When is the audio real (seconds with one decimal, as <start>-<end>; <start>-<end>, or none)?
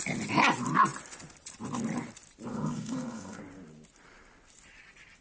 0.0-2.5; 3.4-5.2